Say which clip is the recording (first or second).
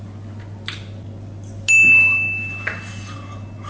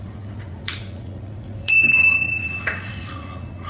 first